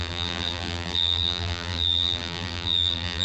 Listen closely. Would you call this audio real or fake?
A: fake